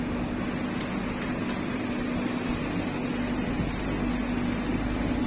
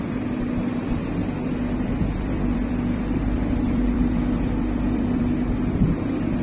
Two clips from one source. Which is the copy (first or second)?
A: second